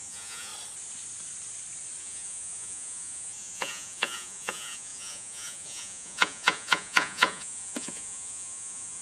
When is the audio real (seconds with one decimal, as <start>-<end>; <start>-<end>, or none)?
0.5-2.0